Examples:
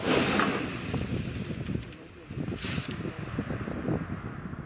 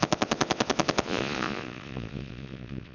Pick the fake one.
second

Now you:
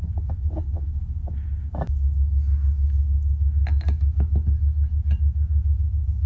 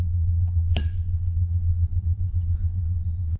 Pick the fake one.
second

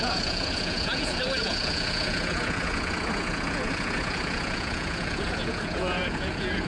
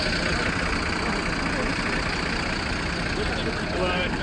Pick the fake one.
first